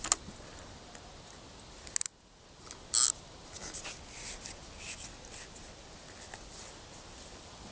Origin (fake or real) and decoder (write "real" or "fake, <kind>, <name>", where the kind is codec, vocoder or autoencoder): real